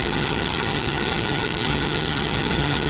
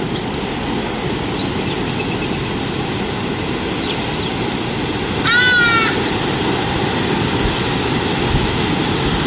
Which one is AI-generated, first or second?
first